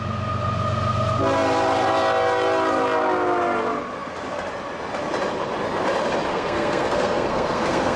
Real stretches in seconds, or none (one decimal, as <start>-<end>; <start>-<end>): 0.0-6.3